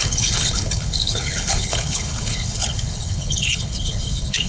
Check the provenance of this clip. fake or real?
fake